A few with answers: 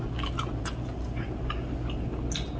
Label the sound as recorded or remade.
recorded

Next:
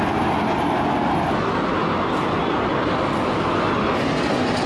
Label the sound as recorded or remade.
recorded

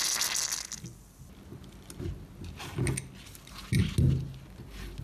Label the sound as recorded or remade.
recorded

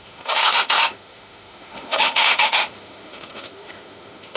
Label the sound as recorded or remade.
remade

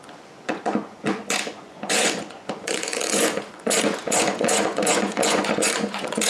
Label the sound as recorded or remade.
remade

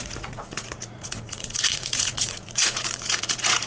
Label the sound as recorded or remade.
remade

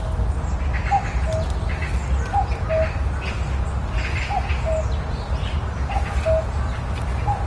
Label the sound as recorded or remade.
recorded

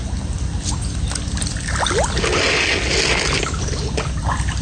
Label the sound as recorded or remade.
recorded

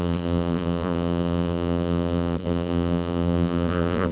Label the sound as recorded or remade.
remade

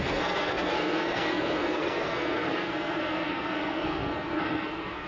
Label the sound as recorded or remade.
remade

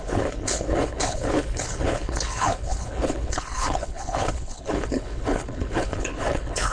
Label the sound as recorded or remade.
remade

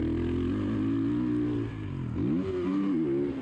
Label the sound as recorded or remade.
recorded